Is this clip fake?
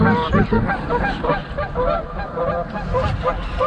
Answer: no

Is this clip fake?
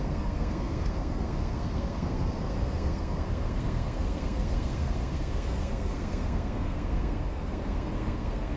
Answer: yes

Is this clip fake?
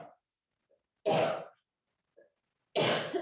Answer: no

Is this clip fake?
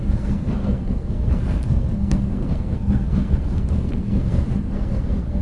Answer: yes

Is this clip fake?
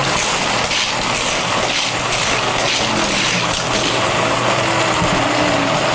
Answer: no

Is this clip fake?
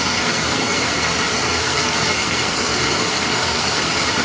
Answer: yes